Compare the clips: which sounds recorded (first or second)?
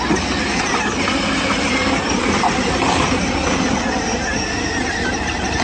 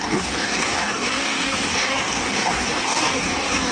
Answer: first